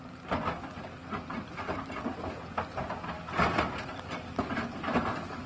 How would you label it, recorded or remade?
recorded